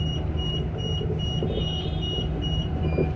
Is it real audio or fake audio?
real